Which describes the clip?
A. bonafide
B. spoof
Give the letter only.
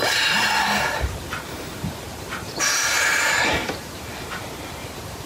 B